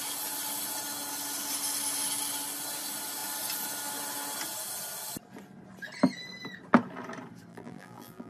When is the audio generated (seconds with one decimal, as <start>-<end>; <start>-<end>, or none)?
7.5-8.3